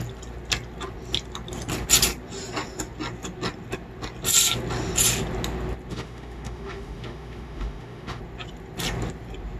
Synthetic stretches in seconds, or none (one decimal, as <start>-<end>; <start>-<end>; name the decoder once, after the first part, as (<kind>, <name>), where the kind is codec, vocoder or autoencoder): 5.9-8.2 (autoencoder, DAC-VAE)